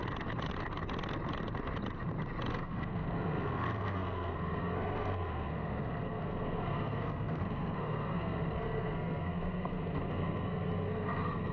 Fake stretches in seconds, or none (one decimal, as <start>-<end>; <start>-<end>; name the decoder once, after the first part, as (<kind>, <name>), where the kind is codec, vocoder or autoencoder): 2.5-11.5 (codec, SNAC)